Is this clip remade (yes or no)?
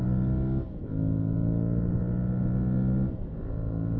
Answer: no